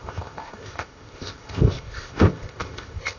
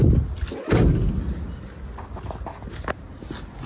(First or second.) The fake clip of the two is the first